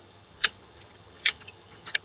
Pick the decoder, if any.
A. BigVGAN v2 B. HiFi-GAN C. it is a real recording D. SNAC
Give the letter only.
B